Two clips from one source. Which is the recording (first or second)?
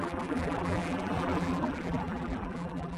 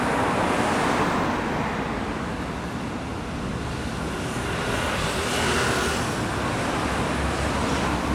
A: second